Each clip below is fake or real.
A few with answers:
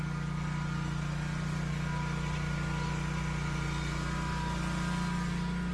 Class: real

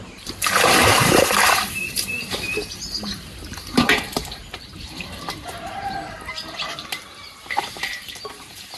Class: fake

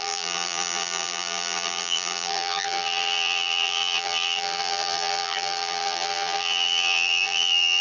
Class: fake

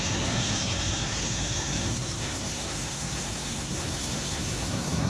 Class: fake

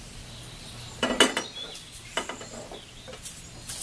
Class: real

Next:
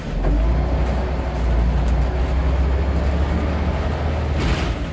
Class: real